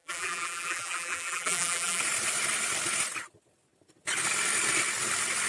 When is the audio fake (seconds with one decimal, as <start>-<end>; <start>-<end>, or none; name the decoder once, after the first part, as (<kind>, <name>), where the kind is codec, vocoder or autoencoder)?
0.0-2.0 (vocoder, BigVGAN v2)